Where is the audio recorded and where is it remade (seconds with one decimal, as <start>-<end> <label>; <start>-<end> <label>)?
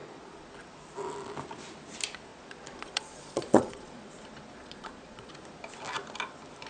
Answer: 0.0-0.5 remade; 0.5-2.3 recorded; 2.3-4.1 remade; 4.1-4.6 recorded; 4.6-5.3 remade; 5.3-6.7 recorded